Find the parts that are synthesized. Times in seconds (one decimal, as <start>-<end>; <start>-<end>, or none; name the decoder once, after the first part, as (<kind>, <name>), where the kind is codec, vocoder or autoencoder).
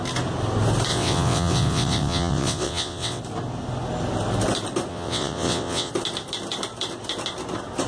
0.9-3.2 (vocoder, WaveNeXt); 4.9-5.9